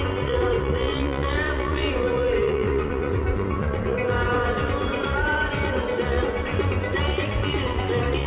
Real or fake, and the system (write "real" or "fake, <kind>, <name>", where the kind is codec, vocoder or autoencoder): fake, vocoder, Vocos